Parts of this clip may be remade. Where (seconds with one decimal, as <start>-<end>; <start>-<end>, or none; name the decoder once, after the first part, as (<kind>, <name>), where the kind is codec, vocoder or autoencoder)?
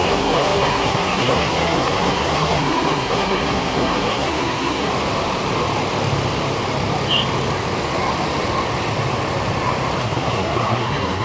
0.0-4.9 (codec, SNAC); 10.0-11.2